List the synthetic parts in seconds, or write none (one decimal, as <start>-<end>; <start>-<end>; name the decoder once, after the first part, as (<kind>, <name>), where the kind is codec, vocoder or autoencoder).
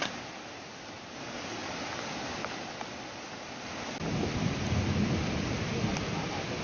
none